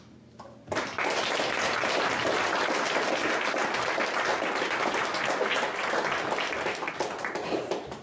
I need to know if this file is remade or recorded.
recorded